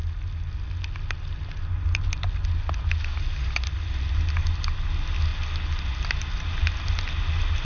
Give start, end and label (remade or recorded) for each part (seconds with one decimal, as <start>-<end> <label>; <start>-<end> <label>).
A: 0.0-7.6 recorded